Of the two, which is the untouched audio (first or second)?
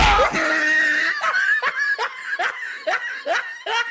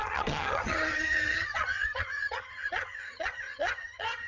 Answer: first